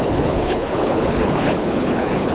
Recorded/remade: remade